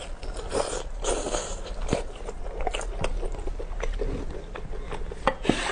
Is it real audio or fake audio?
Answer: real